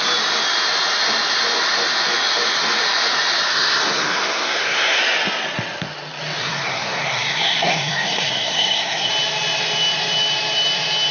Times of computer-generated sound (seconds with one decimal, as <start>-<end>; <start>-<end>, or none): 3.5-5.0; 6.4-9.1